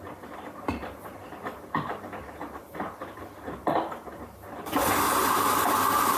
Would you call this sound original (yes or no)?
yes